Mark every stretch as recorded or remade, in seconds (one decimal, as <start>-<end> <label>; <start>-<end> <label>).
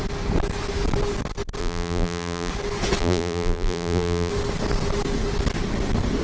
0.0-1.6 recorded; 1.6-2.5 remade; 2.5-3.0 recorded; 3.0-4.3 remade; 4.3-6.2 recorded